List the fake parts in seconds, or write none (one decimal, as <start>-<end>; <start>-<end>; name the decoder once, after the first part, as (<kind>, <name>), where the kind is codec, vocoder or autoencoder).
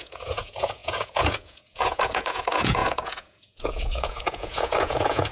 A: 0.0-5.3 (vocoder, Vocos)